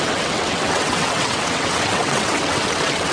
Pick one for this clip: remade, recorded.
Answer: remade